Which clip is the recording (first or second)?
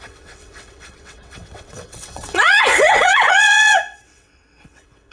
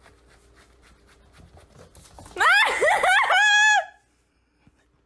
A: second